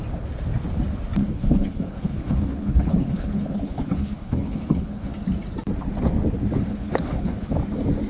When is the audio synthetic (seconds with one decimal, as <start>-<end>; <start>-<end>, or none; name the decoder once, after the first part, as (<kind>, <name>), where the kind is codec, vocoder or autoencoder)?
1.2-5.1 (codec, HILCodec); 6.7-7.6